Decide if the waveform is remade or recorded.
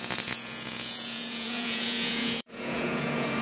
remade